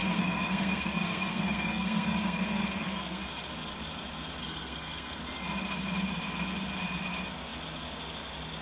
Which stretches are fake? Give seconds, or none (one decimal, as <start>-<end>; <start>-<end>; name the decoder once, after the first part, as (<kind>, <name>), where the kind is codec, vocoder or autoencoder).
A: 0.0-3.2 (codec, SNAC); 4.4-5.2